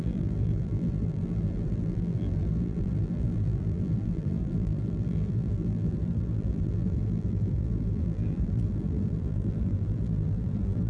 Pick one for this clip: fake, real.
fake